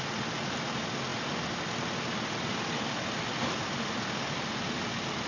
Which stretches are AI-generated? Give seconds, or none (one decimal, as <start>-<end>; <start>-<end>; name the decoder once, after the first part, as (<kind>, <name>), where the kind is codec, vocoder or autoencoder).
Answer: none